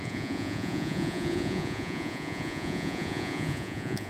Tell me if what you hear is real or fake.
fake